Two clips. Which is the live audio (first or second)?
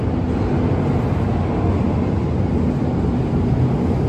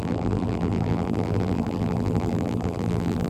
first